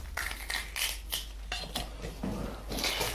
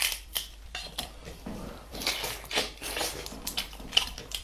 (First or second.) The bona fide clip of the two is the first